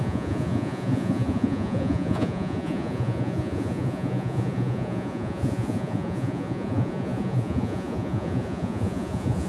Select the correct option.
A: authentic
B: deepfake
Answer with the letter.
B